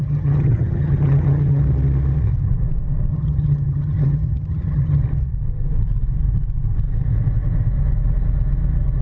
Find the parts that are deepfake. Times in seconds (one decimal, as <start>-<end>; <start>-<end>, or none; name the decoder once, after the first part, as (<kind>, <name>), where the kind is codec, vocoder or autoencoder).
0.0-1.6 (vocoder, HiFi-GAN); 3.1-5.0